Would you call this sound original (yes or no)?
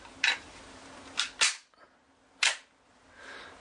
yes